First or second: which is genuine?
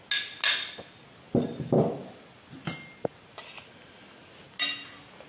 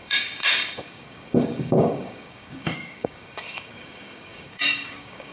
first